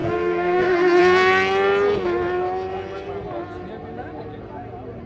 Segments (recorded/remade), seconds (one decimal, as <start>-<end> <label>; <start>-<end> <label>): 0.0-1.0 remade; 1.0-5.1 recorded